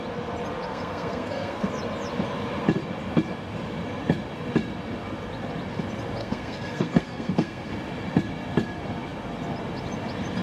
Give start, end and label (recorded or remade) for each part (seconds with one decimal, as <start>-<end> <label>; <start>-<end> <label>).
0.0-0.7 recorded; 0.7-1.7 remade; 1.7-6.2 recorded; 6.2-7.7 remade; 7.7-10.4 recorded